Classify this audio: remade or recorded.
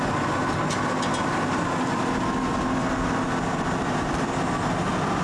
recorded